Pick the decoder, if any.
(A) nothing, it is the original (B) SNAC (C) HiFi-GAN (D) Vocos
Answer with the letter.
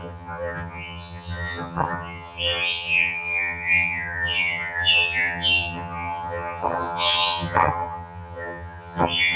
C